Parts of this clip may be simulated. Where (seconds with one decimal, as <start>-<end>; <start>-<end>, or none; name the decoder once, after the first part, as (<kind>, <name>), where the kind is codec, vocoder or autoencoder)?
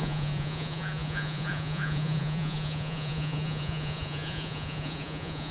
0.0-5.5 (vocoder, Vocos)